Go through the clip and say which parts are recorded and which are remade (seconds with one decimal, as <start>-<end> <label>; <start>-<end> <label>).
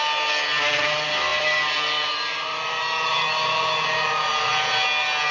0.0-1.3 recorded; 1.3-4.5 remade; 4.5-5.3 recorded